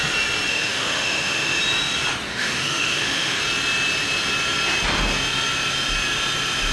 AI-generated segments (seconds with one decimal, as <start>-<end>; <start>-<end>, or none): 0.5-1.6; 2.3-3.4